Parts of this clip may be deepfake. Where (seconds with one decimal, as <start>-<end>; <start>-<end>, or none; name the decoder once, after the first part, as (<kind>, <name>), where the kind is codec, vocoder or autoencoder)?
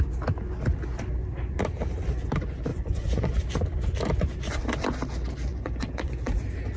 2.7-3.3 (vocoder, Vocos); 5.5-6.3